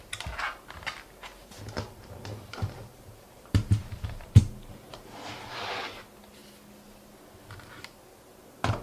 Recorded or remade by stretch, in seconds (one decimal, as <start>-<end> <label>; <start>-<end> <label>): 0.0-1.4 recorded; 1.4-5.1 remade; 5.1-8.8 recorded